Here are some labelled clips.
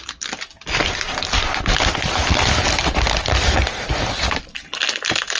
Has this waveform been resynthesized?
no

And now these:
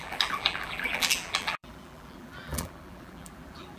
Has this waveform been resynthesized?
yes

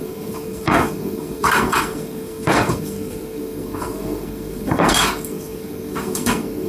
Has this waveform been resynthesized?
yes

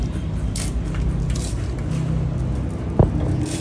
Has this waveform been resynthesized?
no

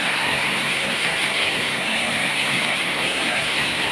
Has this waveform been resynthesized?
yes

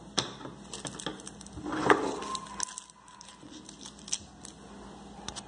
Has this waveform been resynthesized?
no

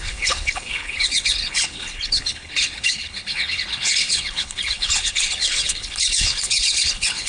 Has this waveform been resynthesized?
yes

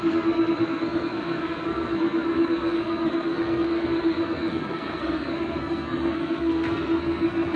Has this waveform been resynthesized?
yes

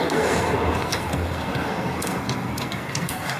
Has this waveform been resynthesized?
yes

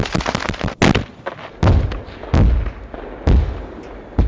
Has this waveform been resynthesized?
no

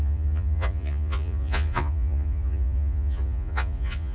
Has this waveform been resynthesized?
yes